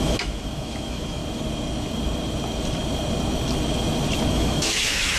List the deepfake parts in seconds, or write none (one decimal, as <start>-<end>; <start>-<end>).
0.0-1.2; 4.3-5.2

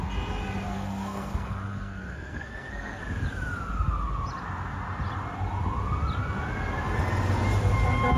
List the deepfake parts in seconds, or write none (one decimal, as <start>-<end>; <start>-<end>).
0.7-3.0

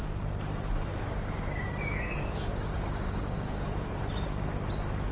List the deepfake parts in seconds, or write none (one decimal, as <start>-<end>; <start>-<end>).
0.9-4.0

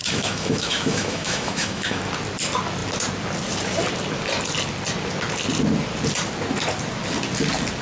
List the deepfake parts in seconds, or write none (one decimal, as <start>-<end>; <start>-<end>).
0.0-2.0

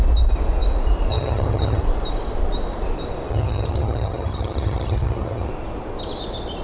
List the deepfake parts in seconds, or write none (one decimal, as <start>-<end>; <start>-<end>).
1.1-1.8; 3.3-5.5

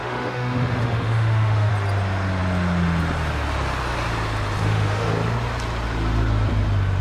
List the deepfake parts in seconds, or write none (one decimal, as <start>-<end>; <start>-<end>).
0.0-1.7; 4.6-5.1

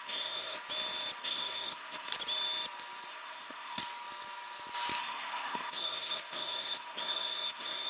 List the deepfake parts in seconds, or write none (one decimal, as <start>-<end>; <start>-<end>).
0.0-0.6; 1.2-2.1; 3.1-3.8; 5.0-7.9